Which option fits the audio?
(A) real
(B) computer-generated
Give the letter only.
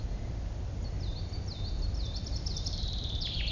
A